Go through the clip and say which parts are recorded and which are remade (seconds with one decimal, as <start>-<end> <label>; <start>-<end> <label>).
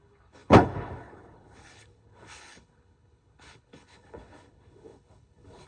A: 0.0-5.7 remade